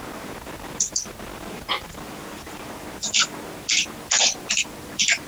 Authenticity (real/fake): real